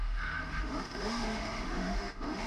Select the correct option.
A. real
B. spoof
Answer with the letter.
B